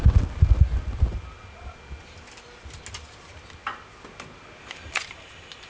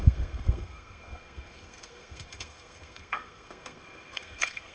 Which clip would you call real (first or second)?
first